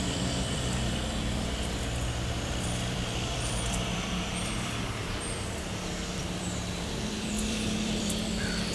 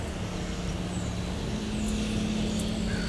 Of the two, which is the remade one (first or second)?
first